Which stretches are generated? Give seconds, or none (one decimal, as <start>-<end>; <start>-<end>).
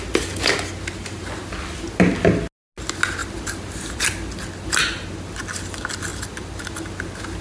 3.2-4.0